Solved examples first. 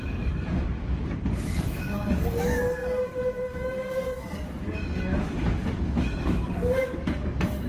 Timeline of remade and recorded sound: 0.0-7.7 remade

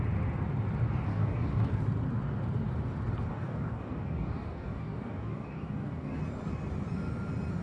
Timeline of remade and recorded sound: 0.0-1.1 recorded; 1.1-1.7 remade; 1.7-3.3 recorded; 3.3-6.2 remade; 6.2-7.6 recorded

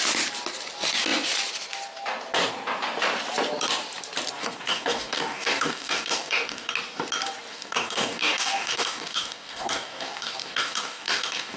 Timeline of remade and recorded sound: 0.0-4.4 recorded; 4.4-6.7 remade; 6.7-7.5 recorded; 7.5-11.6 remade

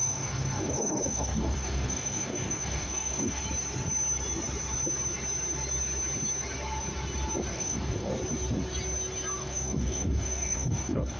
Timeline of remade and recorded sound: 0.0-3.4 remade; 3.4-7.5 recorded; 7.5-8.1 remade; 8.1-9.4 recorded; 9.4-11.2 remade

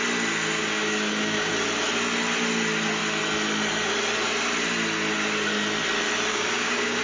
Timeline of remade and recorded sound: 0.0-0.6 recorded; 0.6-1.5 remade; 1.5-6.3 recorded; 6.3-7.0 remade